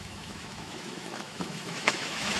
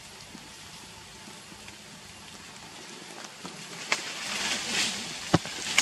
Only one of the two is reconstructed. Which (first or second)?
first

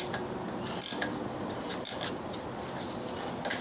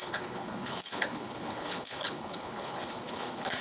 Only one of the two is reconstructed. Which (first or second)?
second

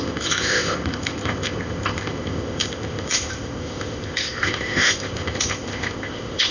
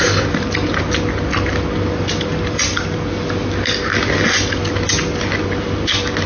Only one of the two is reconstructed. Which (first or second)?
first